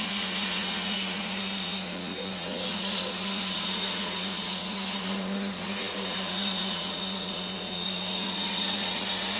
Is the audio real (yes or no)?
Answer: no